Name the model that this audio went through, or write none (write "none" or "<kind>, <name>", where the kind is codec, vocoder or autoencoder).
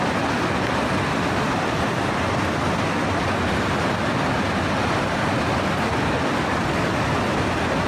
none